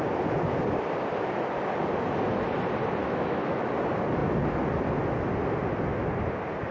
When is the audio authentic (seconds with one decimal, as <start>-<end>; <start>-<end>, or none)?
0.0-3.0; 3.7-6.7